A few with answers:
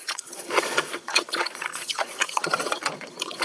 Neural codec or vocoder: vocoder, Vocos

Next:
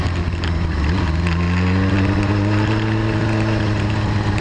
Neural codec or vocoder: none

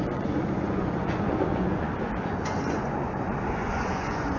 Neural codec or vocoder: vocoder, Vocos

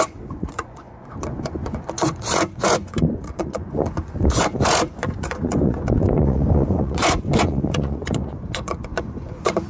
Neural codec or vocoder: vocoder, Vocos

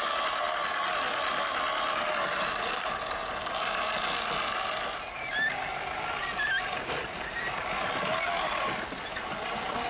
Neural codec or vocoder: none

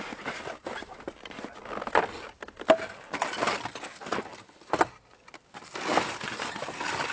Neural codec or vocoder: none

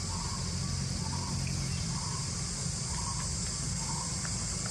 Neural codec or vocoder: none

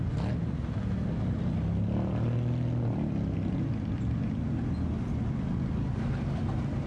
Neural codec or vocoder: none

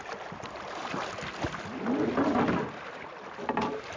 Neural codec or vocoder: none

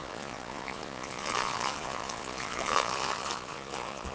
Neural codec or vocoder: vocoder, Vocos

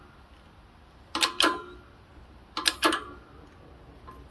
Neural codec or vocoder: none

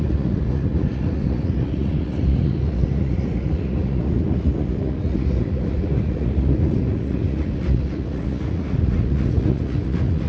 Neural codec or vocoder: vocoder, Vocos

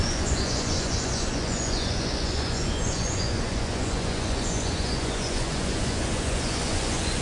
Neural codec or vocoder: vocoder, Vocos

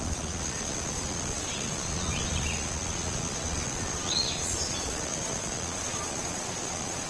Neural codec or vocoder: vocoder, Vocos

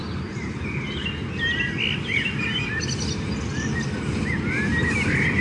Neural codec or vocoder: none